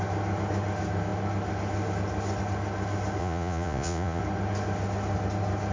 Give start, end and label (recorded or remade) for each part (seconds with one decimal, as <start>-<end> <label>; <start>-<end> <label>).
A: 0.0-3.2 recorded; 3.2-4.2 remade; 4.2-5.7 recorded